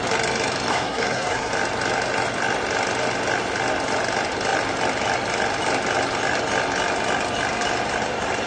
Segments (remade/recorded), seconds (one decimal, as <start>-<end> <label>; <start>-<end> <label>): 0.0-0.7 recorded; 0.7-1.5 remade; 1.5-8.5 recorded